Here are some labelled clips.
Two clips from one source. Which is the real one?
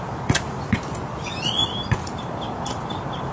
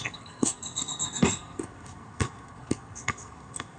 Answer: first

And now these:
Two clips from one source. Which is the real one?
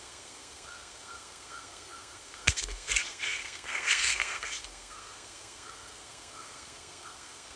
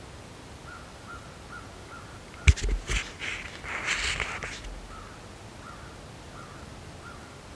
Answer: second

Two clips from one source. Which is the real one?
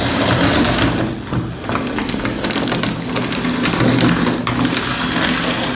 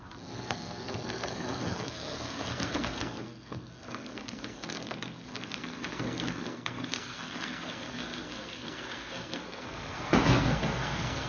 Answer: first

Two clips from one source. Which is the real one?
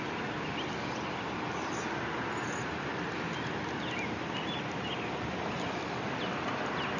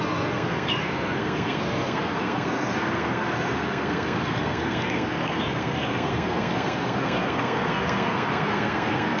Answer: first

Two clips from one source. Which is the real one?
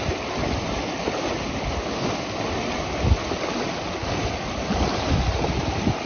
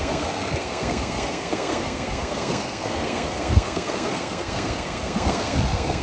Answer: first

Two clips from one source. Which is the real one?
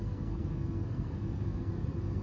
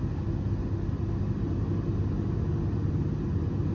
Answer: second